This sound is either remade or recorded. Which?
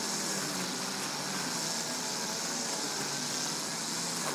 recorded